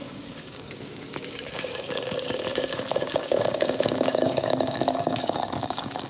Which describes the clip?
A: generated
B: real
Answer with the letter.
A